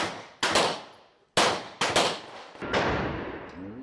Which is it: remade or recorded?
recorded